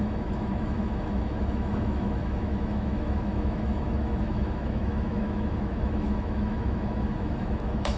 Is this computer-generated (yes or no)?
yes